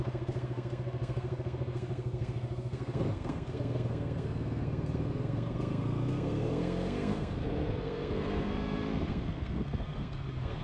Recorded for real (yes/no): no